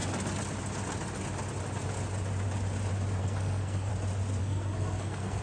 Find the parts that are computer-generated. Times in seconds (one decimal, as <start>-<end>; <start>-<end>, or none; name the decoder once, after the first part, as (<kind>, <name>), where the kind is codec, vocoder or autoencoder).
3.2-3.9 (codec, SNAC); 4.4-5.4